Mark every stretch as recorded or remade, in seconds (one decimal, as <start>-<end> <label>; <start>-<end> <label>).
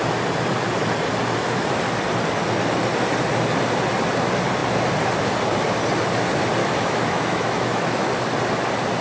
0.0-6.6 recorded; 6.6-8.1 remade; 8.1-9.0 recorded